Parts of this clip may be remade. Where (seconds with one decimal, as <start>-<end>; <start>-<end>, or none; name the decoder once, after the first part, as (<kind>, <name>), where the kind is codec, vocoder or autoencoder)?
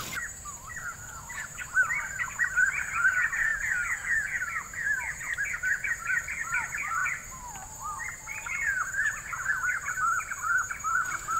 0.0-0.7 (vocoder, BigVGAN v2); 1.3-3.5; 5.6-11.4